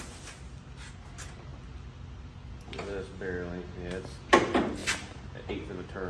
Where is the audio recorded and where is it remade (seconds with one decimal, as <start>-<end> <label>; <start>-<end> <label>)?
0.0-6.1 recorded